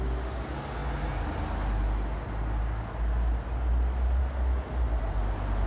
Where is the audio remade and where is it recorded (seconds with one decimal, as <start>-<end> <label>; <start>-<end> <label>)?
0.0-5.7 recorded